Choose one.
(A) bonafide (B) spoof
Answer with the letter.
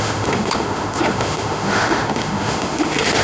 B